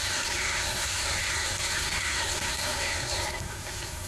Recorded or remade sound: remade